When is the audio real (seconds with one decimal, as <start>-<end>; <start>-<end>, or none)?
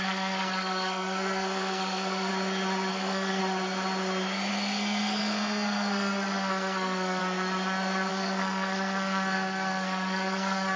2.3-2.9; 3.4-4.5; 7.2-8.1